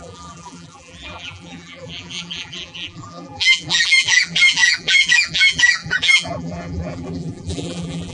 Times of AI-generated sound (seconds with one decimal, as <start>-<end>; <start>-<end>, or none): 0.0-8.1